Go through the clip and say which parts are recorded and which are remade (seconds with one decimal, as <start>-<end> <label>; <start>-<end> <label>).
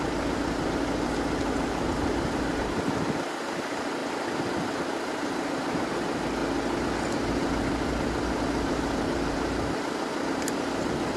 0.0-4.0 remade; 4.0-4.7 recorded; 4.7-6.4 remade; 6.4-8.4 recorded; 8.4-11.2 remade